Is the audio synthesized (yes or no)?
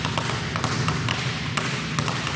no